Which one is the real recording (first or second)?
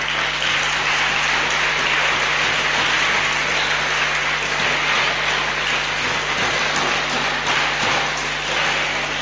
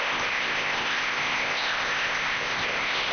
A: first